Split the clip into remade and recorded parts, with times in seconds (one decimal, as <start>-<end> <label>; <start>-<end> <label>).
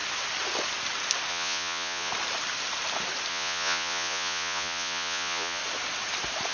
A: 0.0-1.3 recorded; 1.3-2.1 remade; 2.1-3.3 recorded; 3.3-5.6 remade; 5.6-6.5 recorded